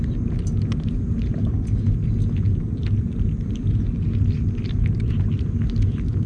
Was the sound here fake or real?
real